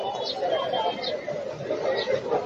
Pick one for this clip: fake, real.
real